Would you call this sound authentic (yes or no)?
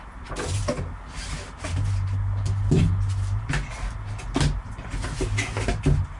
yes